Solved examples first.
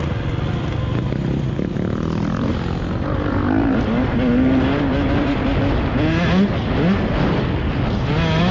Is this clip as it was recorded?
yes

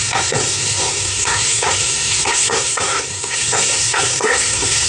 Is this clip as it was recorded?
no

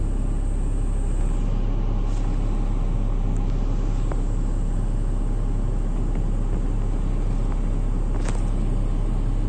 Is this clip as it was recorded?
yes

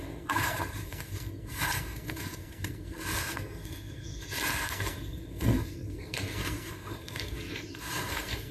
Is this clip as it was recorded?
no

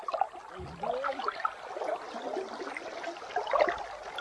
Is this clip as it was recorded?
yes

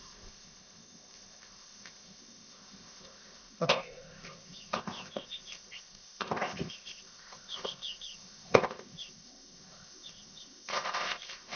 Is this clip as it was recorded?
no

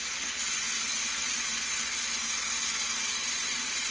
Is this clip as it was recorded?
yes